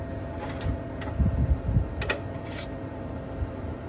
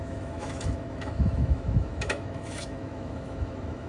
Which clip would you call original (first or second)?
first